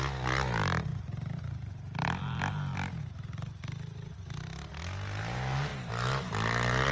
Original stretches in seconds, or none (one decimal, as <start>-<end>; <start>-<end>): 0.0-6.9